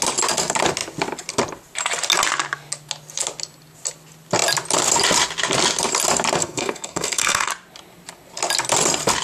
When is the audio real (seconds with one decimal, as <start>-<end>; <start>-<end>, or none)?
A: 0.0-6.4; 7.5-9.2